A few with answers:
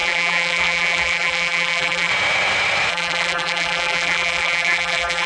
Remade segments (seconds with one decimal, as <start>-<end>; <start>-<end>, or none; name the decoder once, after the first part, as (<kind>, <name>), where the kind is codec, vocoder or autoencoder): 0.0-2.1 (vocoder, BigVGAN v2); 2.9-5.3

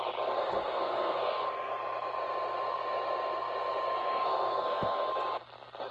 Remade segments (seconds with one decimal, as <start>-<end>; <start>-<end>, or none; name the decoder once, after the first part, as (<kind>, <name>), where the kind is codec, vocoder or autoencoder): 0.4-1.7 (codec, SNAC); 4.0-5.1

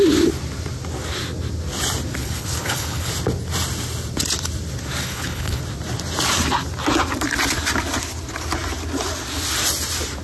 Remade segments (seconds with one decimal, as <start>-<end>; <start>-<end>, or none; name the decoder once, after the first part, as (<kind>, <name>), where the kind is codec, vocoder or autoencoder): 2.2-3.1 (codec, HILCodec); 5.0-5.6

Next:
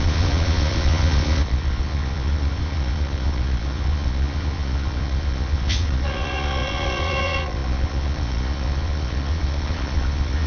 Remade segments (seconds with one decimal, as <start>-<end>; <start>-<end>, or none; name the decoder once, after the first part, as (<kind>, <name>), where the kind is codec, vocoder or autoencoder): 0.0-10.5 (vocoder, Vocos)

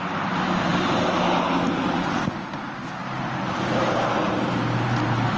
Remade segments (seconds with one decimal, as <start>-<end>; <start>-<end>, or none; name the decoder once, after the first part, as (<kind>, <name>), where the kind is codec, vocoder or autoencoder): 3.0-4.5 (vocoder, BigVGAN v2)